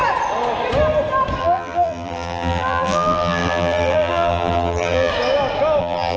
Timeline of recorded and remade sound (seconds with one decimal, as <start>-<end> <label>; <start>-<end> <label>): 0.0-1.4 recorded; 1.4-5.1 remade; 5.1-5.8 recorded; 5.8-6.2 remade

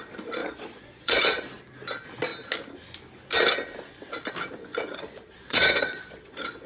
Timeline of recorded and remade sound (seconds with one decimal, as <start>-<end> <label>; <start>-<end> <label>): 0.0-0.4 recorded; 0.4-1.4 remade; 1.4-4.7 recorded; 4.7-6.7 remade

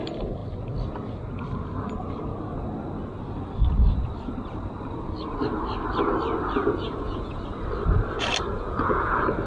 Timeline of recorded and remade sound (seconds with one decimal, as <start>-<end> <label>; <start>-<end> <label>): 0.0-6.6 recorded; 6.6-7.4 remade; 7.4-8.5 recorded; 8.5-9.1 remade; 9.1-9.5 recorded

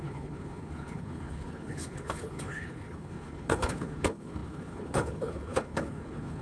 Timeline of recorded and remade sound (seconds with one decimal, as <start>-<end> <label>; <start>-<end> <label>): 0.0-6.4 remade

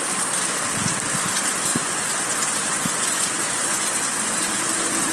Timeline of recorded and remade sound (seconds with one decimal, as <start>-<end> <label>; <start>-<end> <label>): 0.0-1.7 recorded; 1.7-4.6 remade; 4.6-5.1 recorded

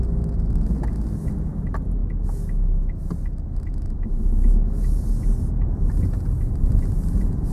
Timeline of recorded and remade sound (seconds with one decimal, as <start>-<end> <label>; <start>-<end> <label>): 0.0-7.5 recorded

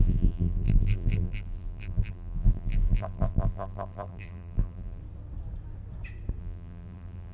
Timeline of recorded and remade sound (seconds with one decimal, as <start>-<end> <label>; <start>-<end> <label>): 0.0-5.0 remade; 5.0-6.4 recorded; 6.4-7.3 remade